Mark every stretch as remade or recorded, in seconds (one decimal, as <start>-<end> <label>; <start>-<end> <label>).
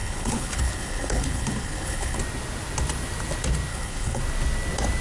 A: 0.0-2.2 remade; 2.2-3.7 recorded; 3.7-4.2 remade; 4.2-5.0 recorded